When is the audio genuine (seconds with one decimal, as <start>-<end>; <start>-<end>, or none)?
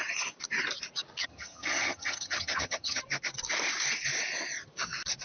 0.0-1.2; 3.0-5.2